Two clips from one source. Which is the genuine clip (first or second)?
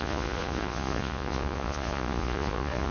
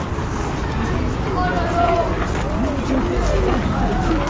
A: second